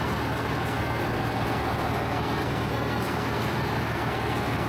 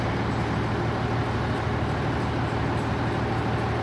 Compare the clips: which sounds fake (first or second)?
first